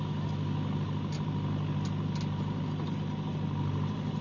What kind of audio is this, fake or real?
real